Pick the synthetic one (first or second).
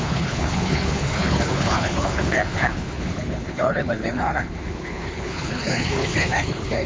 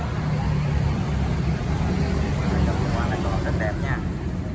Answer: first